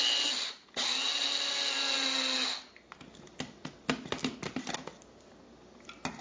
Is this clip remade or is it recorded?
recorded